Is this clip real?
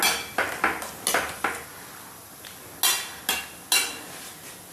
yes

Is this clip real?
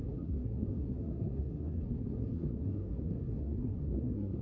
no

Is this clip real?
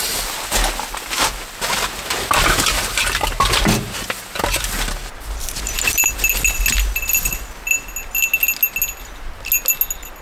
yes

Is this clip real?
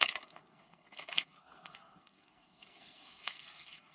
no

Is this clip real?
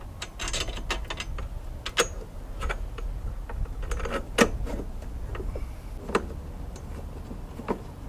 yes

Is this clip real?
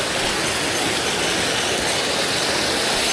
yes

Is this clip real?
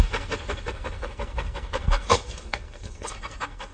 no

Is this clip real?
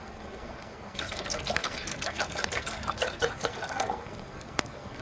no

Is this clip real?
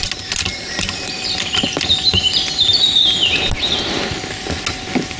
yes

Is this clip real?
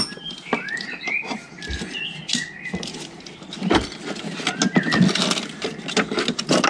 yes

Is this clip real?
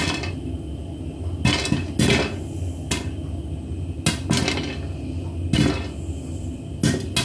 yes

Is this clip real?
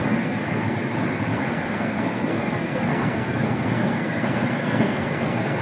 no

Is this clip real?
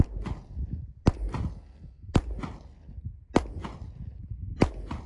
yes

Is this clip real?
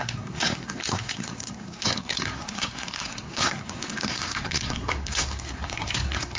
no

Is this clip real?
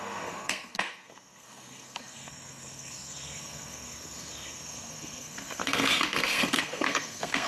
no